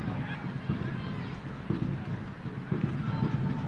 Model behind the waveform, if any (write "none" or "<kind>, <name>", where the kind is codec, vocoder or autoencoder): none